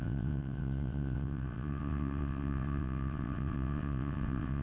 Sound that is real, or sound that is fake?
fake